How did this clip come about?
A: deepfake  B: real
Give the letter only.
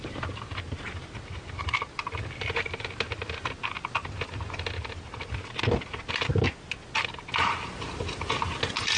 B